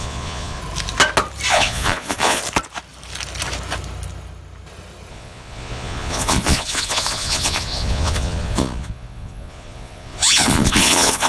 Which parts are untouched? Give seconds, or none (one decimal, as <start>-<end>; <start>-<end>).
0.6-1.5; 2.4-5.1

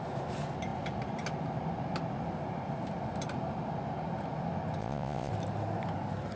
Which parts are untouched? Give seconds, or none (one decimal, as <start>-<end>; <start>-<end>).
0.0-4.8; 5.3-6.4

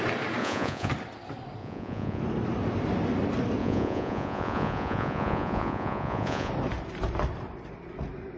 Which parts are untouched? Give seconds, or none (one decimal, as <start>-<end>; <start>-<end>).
0.0-0.4; 0.9-1.6; 2.2-3.6; 6.5-8.4